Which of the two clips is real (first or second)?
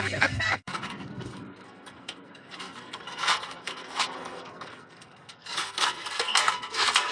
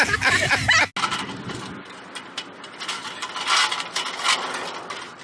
second